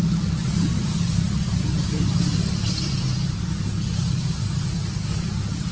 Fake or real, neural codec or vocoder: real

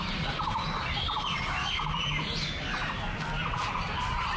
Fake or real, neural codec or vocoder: real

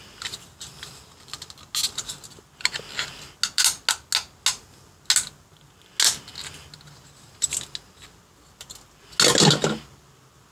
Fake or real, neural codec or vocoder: real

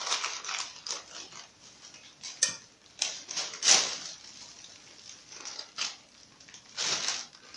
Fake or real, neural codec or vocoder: real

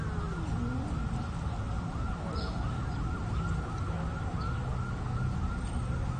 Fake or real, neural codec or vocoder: real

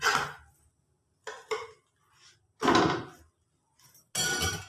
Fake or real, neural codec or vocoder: real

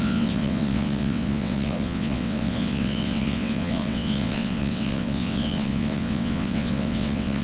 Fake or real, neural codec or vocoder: fake, vocoder, WaveNeXt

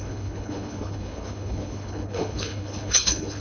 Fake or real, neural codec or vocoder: fake, codec, HILCodec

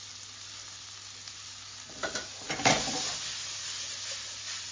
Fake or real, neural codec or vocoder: real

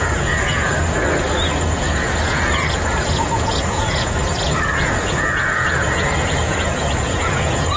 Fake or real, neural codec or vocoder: fake, vocoder, Vocos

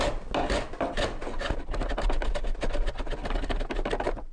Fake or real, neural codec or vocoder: real